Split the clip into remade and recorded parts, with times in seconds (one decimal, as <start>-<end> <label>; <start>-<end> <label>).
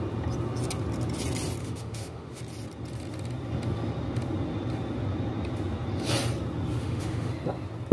0.0-1.6 recorded; 1.6-2.4 remade; 2.4-6.8 recorded; 6.8-7.3 remade; 7.3-7.9 recorded